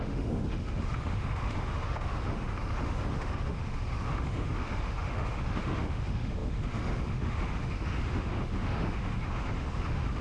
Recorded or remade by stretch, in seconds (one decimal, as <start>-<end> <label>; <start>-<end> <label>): 0.0-10.2 remade